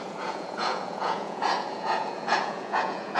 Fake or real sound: fake